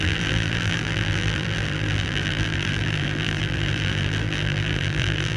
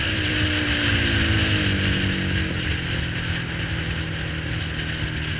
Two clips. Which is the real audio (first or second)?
second